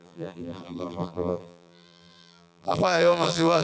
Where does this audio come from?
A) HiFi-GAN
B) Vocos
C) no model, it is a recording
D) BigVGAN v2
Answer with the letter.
D